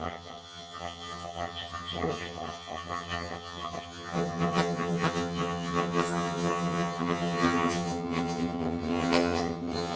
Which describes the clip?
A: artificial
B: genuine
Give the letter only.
A